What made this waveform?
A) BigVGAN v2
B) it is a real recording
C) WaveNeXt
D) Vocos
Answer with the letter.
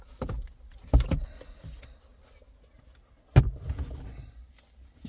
B